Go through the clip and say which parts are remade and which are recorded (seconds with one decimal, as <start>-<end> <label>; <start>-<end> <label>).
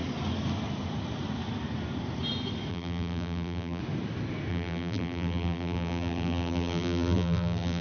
0.0-2.7 recorded; 2.7-3.8 remade; 3.8-4.5 recorded; 4.5-7.8 remade